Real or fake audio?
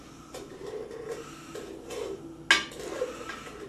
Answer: real